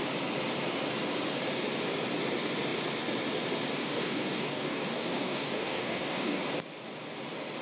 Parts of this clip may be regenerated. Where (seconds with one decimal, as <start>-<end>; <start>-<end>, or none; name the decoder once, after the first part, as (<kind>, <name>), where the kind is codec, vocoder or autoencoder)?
3.7-6.4 (codec, DAC)